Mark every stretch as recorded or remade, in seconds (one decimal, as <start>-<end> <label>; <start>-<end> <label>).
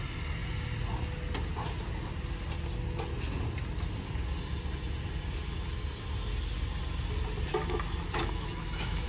0.0-8.2 recorded; 8.2-9.1 remade